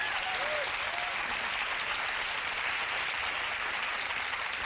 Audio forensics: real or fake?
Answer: real